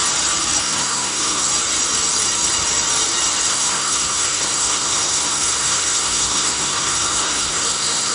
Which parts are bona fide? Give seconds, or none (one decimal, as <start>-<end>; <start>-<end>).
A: 0.0-0.6; 1.5-3.5